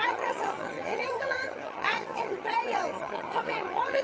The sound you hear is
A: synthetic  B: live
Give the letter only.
A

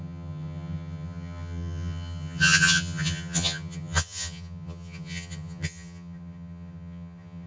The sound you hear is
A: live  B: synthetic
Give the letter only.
B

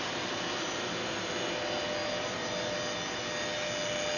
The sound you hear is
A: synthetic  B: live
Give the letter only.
B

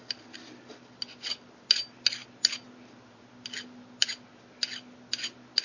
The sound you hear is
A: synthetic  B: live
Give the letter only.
B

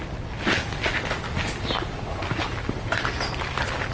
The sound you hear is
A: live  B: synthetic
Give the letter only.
A